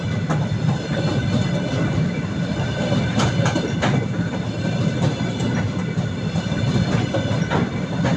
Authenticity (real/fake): fake